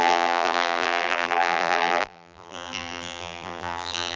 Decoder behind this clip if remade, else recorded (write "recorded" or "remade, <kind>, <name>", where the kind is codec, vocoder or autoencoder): remade, vocoder, BigVGAN v2